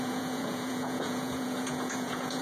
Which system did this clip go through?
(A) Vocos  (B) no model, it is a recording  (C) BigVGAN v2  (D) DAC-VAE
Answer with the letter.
A